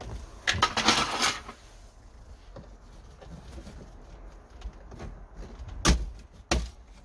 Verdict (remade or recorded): recorded